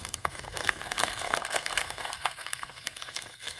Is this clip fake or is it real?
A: fake